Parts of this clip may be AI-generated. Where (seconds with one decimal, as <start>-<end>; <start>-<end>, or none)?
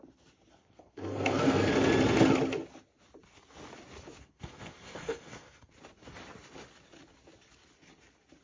0.5-1.7; 4.2-5.7